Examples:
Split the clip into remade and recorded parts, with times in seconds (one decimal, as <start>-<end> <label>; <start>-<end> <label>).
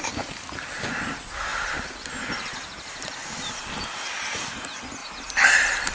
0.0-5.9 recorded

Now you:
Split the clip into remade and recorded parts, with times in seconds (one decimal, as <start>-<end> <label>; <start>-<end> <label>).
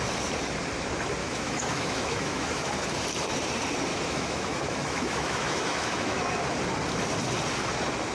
0.0-1.2 recorded; 1.2-2.7 remade; 2.7-3.9 recorded; 3.9-6.2 remade; 6.2-8.1 recorded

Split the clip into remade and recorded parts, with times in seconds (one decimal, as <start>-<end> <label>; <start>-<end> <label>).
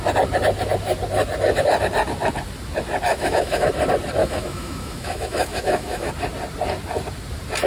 0.0-3.1 recorded; 3.1-3.7 remade; 3.7-4.2 recorded; 4.2-6.1 remade; 6.1-7.7 recorded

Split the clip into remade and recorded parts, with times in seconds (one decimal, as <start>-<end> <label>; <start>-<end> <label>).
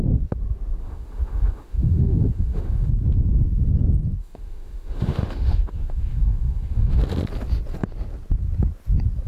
0.0-0.8 recorded; 0.8-2.9 remade; 2.9-4.2 recorded; 4.2-7.0 remade; 7.0-9.3 recorded